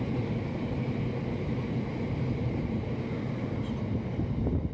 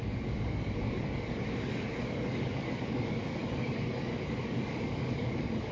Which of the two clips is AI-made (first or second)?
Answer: second